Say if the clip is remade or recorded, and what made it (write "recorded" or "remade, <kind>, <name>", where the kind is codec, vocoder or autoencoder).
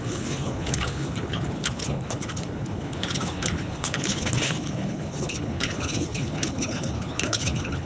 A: remade, codec, HILCodec